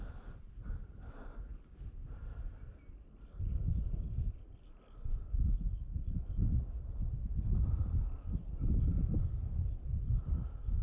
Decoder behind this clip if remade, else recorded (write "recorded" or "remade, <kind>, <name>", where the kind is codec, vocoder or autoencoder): recorded